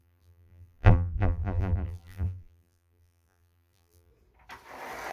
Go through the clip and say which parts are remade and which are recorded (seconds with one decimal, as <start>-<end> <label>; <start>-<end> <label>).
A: 0.0-4.1 remade; 4.1-5.1 recorded